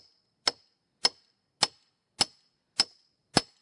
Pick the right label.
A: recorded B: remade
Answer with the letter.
A